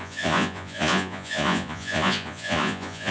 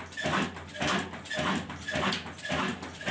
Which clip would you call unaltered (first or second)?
second